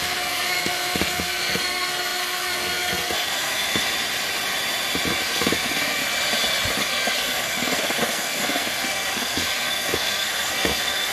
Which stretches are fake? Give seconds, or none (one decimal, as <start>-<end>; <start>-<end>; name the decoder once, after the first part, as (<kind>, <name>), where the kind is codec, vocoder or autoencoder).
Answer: 0.0-3.9 (codec, SNAC); 5.2-6.0; 6.8-11.1